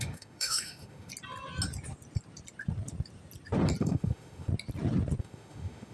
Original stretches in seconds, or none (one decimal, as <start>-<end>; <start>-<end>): 1.1-3.8; 4.5-5.2